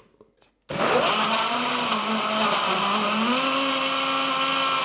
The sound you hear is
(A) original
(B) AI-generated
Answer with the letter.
A